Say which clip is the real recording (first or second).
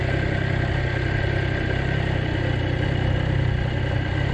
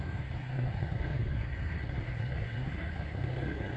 first